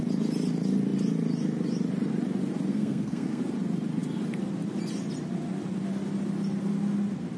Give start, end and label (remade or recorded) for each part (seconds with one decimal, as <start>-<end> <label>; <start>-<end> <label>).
0.0-2.7 recorded; 2.7-3.4 remade; 3.4-7.4 recorded

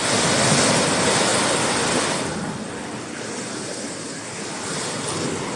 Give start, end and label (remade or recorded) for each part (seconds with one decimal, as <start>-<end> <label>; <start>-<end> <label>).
0.0-5.6 recorded

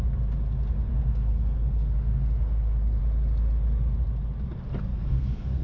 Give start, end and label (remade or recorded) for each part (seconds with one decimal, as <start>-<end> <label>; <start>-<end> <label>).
0.0-0.9 recorded; 0.9-3.0 remade; 3.0-4.9 recorded; 4.9-5.6 remade

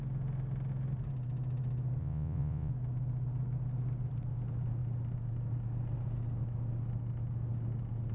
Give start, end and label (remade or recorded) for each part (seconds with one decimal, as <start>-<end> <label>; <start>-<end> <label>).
0.0-2.0 recorded; 2.0-2.7 remade; 2.7-8.1 recorded

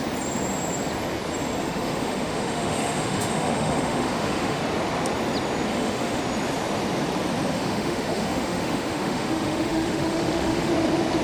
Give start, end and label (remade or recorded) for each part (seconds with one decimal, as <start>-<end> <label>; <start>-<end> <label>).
0.0-1.6 recorded; 1.6-4.6 remade; 4.6-5.7 recorded; 5.7-6.2 remade; 6.2-7.5 recorded; 7.5-10.7 remade; 10.7-11.2 recorded